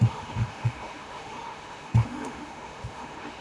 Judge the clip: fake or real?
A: fake